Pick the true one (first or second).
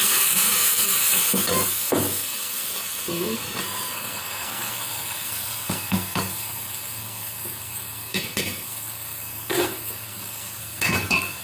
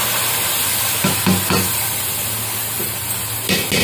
second